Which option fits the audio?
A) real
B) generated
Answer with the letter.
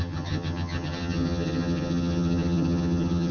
B